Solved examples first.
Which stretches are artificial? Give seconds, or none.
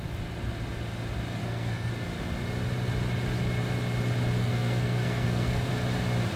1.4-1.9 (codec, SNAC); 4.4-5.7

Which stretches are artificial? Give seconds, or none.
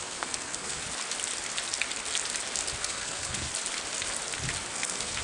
0.0-0.8 (codec, SNAC); 2.8-3.5; 4.7-5.2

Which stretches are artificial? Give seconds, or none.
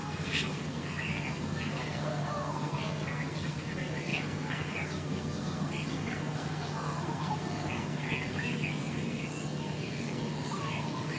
0.0-11.2 (codec, SNAC)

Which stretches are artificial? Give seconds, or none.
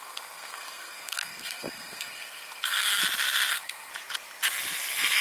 0.0-3.0 (codec, SNAC); 3.5-3.9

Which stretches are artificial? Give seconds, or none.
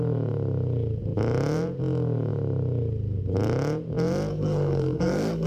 4.3-5.5 (codec, SNAC)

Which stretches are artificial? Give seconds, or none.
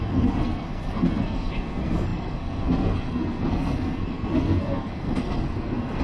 0.0-6.0 (codec, SNAC)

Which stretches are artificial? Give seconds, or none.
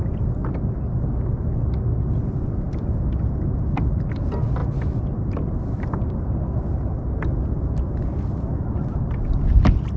none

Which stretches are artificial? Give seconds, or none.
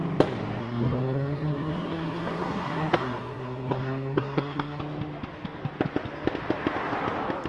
0.6-4.8 (codec, SNAC)